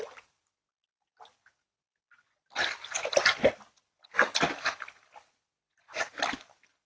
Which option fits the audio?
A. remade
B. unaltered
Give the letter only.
B